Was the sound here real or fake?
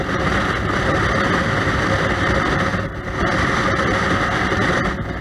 real